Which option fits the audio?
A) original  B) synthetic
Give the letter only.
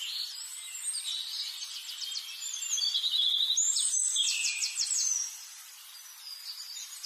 A